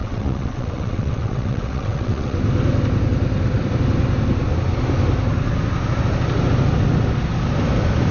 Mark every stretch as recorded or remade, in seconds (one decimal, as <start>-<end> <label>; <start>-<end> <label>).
0.0-2.4 remade; 2.4-8.1 recorded